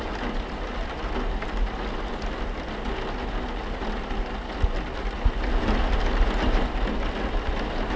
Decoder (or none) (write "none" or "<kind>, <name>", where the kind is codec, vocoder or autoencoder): none